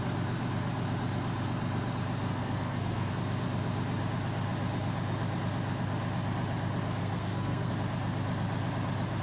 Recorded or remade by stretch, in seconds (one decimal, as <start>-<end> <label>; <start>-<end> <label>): 0.0-2.3 recorded; 2.3-3.1 remade; 3.1-7.0 recorded; 7.0-7.7 remade; 7.7-9.2 recorded